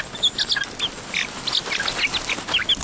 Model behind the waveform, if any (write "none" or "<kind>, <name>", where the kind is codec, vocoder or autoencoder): none